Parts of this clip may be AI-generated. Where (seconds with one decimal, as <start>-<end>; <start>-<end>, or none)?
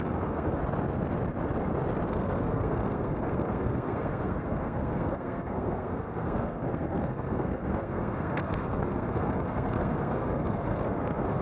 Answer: 0.0-0.6; 2.1-11.4